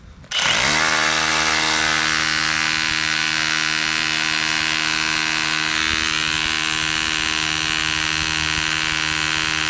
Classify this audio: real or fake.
real